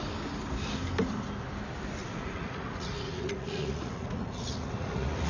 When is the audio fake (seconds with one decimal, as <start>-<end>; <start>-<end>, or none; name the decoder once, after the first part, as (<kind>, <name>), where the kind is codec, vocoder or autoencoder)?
2.0-5.3 (vocoder, Vocos)